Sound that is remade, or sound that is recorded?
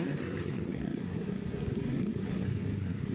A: remade